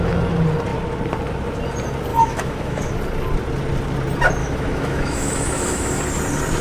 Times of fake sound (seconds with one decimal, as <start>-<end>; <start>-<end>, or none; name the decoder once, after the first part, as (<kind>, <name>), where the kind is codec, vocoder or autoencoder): 2.1-2.9 (autoencoder, DAC-VAE); 4.4-6.0